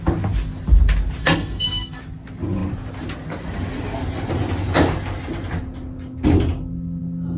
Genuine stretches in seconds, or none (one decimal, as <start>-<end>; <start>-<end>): 0.0-1.2; 2.0-7.4